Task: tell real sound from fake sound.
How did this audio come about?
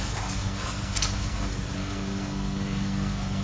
fake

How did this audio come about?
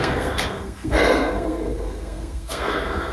fake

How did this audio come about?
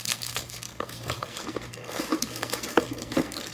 fake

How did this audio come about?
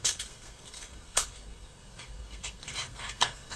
fake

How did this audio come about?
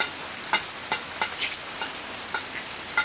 real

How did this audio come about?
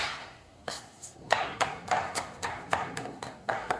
fake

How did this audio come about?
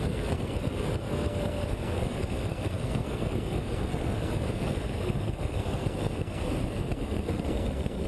fake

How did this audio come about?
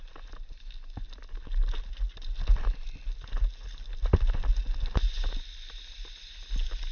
real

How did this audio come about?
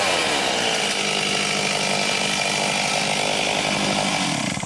real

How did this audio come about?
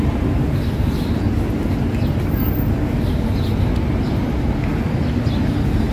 real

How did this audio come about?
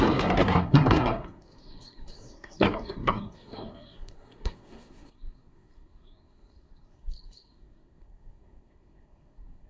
fake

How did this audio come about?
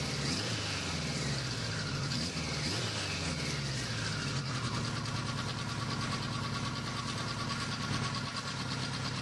real